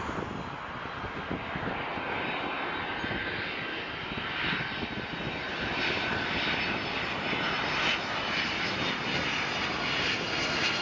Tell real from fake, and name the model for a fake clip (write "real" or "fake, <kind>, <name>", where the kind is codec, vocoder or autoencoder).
real